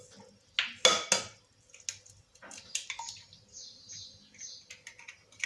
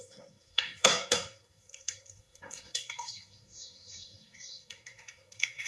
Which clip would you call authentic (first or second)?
first